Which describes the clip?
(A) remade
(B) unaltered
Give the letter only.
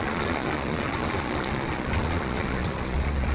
A